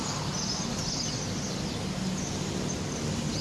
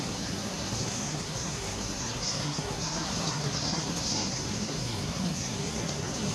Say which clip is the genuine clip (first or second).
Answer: first